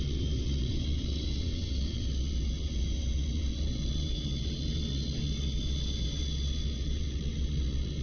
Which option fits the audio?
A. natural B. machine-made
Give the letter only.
B